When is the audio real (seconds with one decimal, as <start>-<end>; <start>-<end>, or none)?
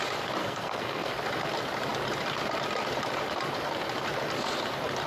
0.0-0.4; 1.1-5.1